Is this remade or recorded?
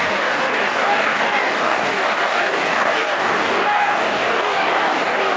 remade